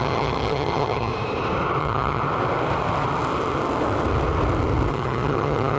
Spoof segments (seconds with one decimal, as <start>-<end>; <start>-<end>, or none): 0.0-1.1; 1.8-2.2; 4.9-5.8